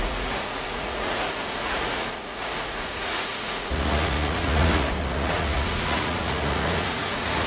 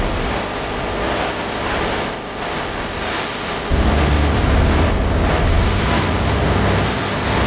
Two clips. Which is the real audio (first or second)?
second